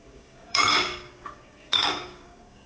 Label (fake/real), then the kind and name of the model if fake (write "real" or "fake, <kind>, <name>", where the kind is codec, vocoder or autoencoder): fake, codec, DAC